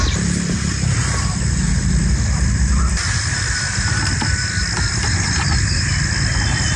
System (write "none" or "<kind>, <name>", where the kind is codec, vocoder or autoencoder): none